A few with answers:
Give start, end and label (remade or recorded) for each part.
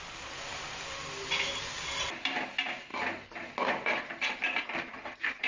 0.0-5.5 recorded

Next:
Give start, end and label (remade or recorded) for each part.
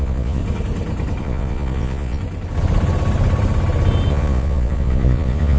0.0-0.4 remade; 0.4-1.2 recorded; 1.2-2.2 remade; 2.2-4.1 recorded; 4.1-5.6 remade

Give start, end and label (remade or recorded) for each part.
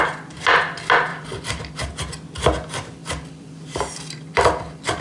0.0-1.1 recorded; 1.1-1.9 remade; 1.9-3.0 recorded; 3.0-5.0 remade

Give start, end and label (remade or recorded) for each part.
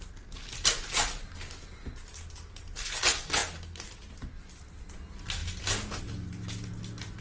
0.0-7.2 recorded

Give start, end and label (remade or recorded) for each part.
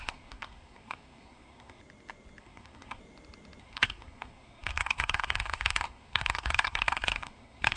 0.0-1.8 remade; 1.8-2.4 recorded; 2.4-3.0 remade; 3.0-3.6 recorded; 3.6-7.8 remade